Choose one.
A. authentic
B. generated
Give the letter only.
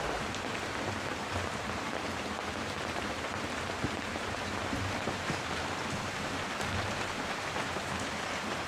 B